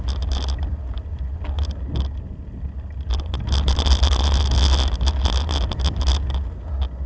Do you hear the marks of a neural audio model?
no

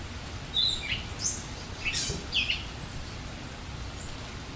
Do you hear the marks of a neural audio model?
no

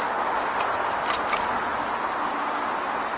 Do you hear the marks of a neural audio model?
no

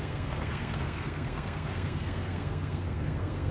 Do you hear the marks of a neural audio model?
yes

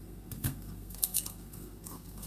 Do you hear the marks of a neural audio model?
yes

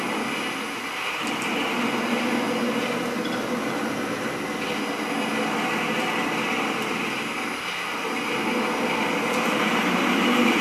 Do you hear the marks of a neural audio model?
no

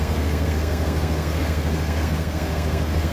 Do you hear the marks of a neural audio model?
yes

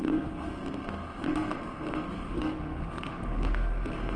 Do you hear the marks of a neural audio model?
yes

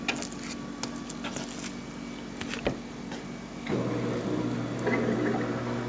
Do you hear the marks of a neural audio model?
no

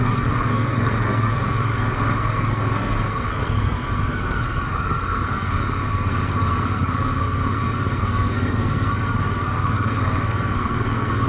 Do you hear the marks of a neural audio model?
yes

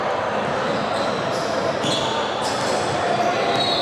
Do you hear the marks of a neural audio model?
no